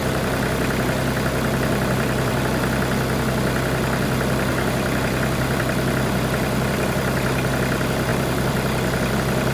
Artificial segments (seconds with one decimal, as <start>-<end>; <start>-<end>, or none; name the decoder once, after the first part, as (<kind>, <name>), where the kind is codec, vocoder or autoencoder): 0.0-2.4 (vocoder, BigVGAN v2); 4.5-7.5; 8.1-9.1